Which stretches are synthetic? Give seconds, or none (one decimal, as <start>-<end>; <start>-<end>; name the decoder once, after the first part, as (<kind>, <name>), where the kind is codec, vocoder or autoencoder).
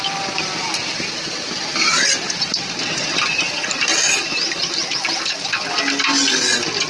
none